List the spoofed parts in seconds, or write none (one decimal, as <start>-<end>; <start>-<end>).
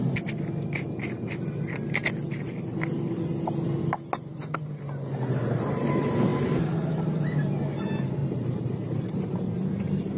8.2-10.2